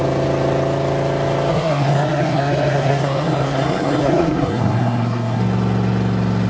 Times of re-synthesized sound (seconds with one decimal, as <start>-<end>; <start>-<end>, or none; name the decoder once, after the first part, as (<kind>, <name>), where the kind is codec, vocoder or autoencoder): 1.5-5.4 (codec, SNAC)